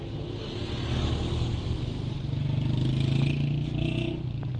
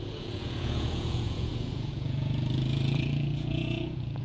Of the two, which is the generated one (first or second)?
second